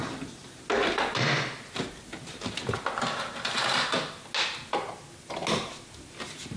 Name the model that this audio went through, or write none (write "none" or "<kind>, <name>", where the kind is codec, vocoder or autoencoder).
none